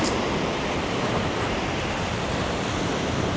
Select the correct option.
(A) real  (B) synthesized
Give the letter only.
A